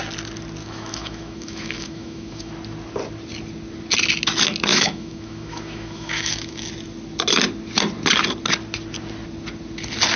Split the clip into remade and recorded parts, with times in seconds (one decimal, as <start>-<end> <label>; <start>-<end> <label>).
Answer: 0.0-0.6 recorded; 0.6-2.5 remade; 2.5-4.7 recorded; 4.7-6.7 remade; 6.7-10.2 recorded